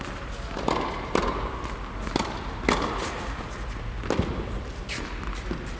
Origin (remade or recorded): recorded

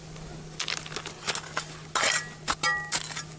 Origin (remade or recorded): recorded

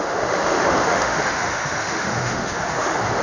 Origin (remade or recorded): remade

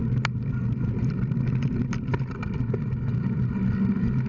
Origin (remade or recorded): recorded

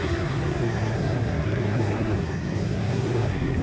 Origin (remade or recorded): remade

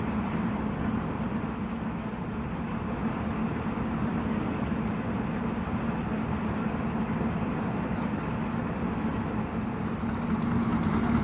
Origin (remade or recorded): recorded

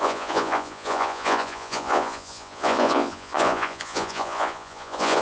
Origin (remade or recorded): remade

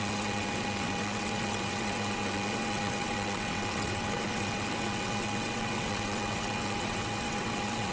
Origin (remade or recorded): remade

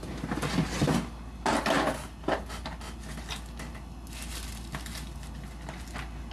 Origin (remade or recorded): recorded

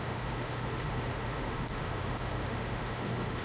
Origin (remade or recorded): remade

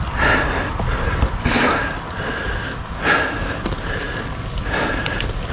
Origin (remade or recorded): recorded